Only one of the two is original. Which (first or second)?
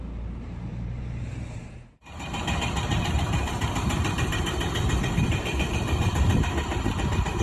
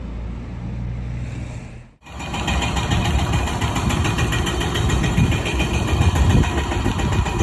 second